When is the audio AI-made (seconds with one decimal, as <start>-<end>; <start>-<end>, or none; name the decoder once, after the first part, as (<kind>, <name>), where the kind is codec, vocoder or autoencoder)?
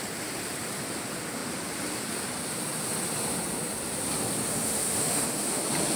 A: 4.5-5.6 (autoencoder, DAC-VAE)